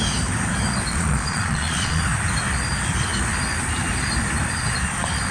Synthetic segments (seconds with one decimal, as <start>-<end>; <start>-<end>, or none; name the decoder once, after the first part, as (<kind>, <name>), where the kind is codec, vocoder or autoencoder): 0.9-2.0 (vocoder, Vocos)